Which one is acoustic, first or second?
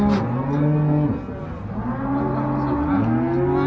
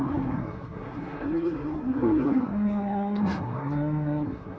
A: first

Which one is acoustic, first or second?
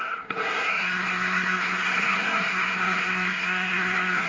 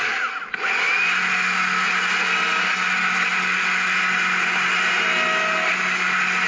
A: second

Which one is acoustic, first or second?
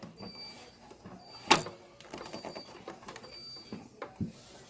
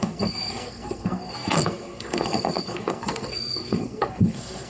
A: first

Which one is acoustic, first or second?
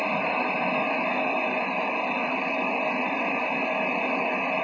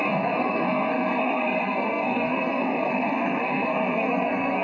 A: first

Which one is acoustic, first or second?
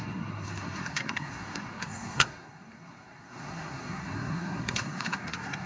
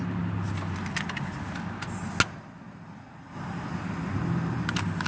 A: second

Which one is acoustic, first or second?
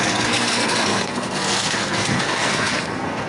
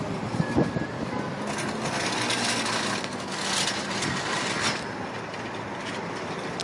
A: second